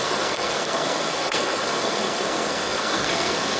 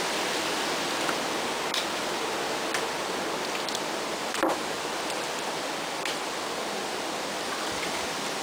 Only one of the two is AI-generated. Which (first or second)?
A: first